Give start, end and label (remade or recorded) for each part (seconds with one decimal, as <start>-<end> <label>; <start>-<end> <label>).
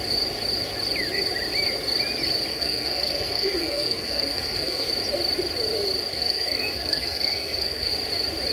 0.0-2.5 recorded; 2.5-4.9 remade; 4.9-6.1 recorded; 6.1-7.9 remade; 7.9-8.5 recorded